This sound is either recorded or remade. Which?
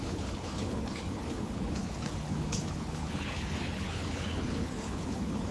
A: remade